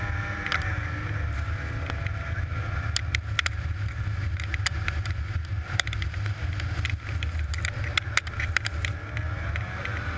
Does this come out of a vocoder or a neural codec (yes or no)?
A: no